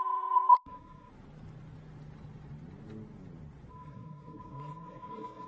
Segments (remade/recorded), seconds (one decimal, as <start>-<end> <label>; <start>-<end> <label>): 0.0-1.1 remade; 1.1-3.7 recorded; 3.7-5.5 remade